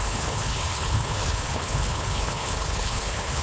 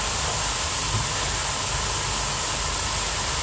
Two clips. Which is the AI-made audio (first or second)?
first